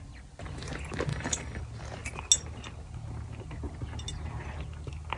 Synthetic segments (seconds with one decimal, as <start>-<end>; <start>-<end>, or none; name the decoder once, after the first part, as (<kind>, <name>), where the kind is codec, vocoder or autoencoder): 1.1-1.6 (codec, DAC)

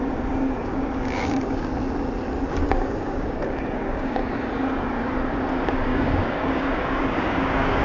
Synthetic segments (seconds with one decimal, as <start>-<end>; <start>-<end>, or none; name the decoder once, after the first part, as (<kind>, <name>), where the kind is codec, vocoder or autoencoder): 0.0-1.7 (codec, DAC); 2.6-4.2; 5.5-7.8

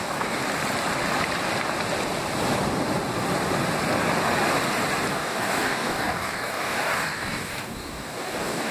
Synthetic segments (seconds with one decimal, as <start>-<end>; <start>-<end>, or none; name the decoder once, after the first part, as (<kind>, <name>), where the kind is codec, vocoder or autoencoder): 0.0-0.4 (codec, DAC); 5.1-8.7

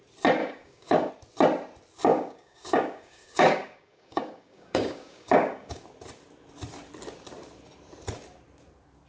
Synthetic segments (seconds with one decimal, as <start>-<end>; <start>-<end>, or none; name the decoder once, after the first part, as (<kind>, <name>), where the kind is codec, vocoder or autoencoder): 0.4-1.1 (codec, DAC); 2.1-5.8

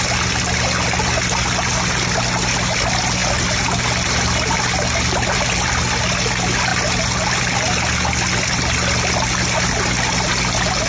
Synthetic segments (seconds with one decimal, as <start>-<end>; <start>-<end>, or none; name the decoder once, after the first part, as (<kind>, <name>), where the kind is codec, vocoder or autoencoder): none